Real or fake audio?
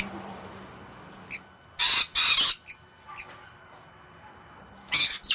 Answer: real